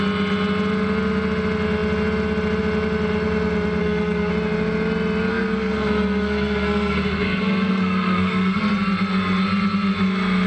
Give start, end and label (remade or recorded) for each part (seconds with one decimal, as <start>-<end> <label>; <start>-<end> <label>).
0.0-3.8 recorded; 3.8-4.3 remade; 4.3-5.3 recorded; 5.3-8.6 remade; 8.6-10.5 recorded